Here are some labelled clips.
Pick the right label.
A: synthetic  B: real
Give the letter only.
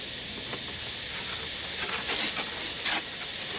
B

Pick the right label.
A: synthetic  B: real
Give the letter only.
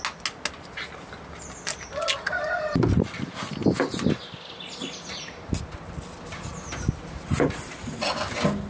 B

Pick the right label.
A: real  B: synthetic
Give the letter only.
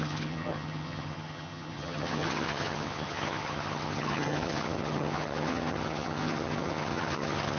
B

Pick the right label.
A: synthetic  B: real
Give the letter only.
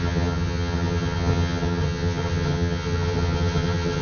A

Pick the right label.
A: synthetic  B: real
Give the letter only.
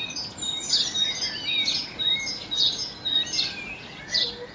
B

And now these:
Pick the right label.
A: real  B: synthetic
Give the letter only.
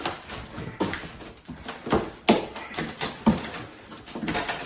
A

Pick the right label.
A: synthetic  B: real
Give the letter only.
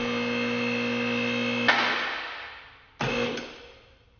B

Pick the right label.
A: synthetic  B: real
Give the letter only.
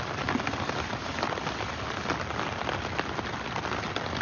B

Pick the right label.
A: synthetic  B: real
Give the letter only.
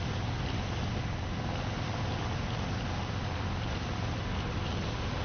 B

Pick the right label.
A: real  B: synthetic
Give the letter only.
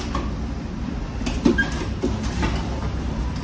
A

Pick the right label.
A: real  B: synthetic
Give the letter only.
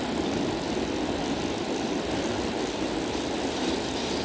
A